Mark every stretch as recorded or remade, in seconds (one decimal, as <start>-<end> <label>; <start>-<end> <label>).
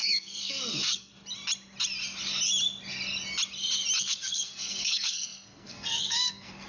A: 0.0-1.1 remade; 1.1-4.0 recorded; 4.0-6.7 remade